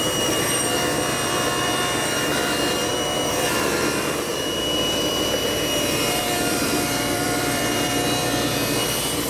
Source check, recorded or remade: remade